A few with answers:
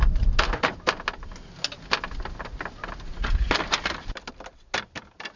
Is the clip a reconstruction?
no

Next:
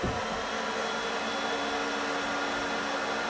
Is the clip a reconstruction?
no